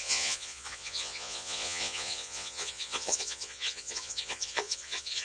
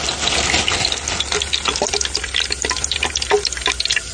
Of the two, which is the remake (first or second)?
first